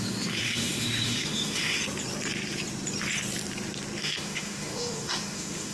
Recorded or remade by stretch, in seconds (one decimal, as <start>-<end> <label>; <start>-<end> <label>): 0.0-1.8 remade; 1.8-4.0 recorded; 4.0-5.7 remade